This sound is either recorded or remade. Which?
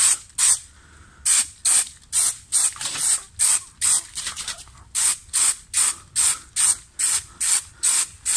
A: recorded